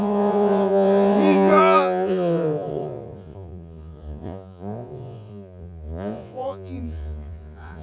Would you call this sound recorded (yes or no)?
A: no